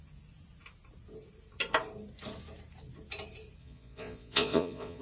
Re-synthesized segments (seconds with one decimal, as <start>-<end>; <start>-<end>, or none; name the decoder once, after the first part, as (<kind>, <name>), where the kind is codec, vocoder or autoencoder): 3.6-5.0 (vocoder, Vocos)